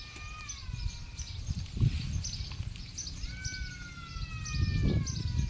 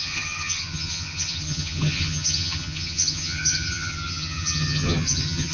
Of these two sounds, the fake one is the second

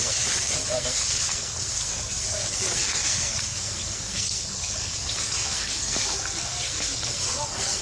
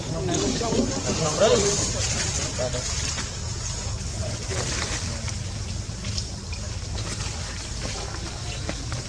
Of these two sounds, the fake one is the first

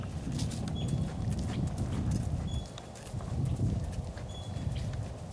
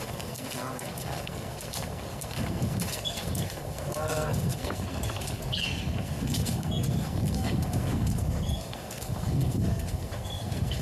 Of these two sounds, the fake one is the second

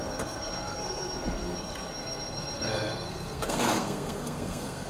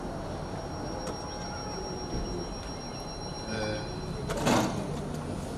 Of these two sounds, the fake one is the first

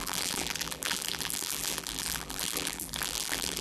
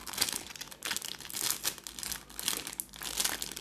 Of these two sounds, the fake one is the first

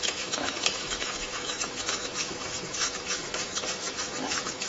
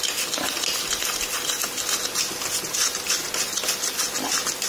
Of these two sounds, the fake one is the first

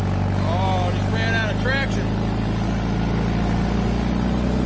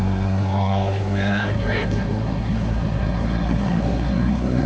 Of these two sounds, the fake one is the second